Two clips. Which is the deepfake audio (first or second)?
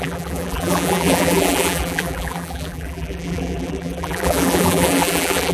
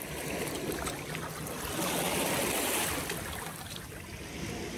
first